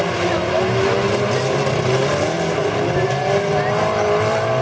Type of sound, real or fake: real